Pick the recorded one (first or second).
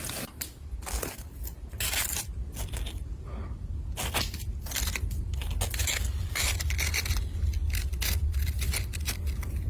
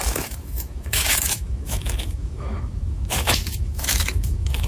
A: first